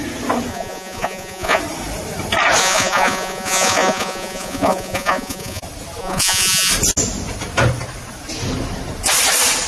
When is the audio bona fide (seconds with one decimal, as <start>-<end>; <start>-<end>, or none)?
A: 0.0-0.5; 1.6-2.6; 5.6-6.0; 6.7-9.7